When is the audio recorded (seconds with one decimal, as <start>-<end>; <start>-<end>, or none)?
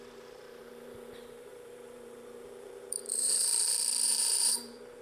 none